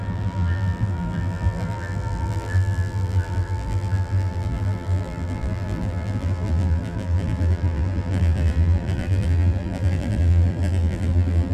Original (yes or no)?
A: no